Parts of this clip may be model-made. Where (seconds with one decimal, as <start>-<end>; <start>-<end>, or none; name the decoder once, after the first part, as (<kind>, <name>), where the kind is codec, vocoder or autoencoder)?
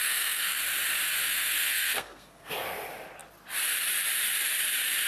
0.0-0.6 (codec, SNAC); 1.2-2.5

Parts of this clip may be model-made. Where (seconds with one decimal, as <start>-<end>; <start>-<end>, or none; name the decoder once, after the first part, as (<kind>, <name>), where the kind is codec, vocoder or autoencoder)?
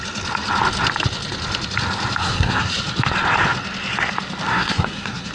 2.2-2.7 (codec, SNAC); 4.5-5.3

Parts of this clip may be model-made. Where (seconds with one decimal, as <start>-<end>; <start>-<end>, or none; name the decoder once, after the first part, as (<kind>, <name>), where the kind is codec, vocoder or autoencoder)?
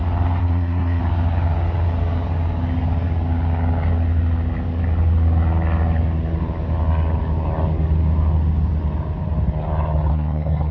0.4-1.0 (codec, SNAC); 10.1-10.7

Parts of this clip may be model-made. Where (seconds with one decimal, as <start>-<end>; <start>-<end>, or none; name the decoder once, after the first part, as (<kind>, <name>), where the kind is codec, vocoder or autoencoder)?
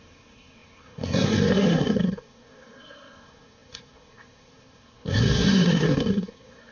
0.0-6.7 (codec, SNAC)